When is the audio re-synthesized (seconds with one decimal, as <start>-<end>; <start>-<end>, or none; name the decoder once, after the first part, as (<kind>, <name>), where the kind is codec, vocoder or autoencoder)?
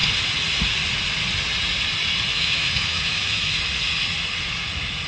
2.3-3.6 (autoencoder, DAC-VAE)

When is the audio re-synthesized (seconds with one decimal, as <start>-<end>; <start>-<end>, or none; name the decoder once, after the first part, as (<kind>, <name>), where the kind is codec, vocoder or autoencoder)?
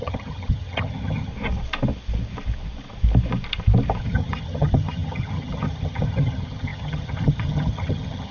0.0-1.3 (vocoder, HiFi-GAN); 4.0-8.3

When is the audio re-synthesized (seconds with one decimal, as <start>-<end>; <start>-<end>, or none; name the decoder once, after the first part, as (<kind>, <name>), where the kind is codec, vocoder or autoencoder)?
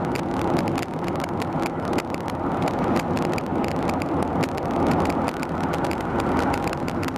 none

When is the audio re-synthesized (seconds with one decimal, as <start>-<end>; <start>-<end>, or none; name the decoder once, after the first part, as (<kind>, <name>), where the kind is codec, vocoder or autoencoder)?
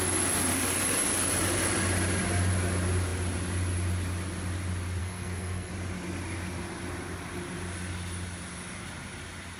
5.0-5.7 (codec, SNAC)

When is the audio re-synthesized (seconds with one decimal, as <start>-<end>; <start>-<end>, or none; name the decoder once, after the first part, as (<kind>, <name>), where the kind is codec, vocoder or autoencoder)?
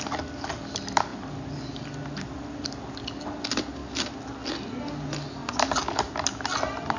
none